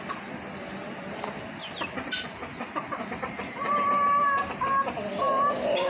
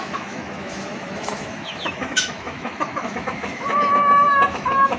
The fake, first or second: second